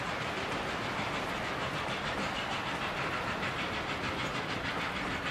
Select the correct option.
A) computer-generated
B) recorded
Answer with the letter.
B